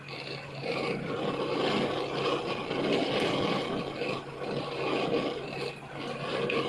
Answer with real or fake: real